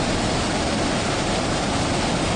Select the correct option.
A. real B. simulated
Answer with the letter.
A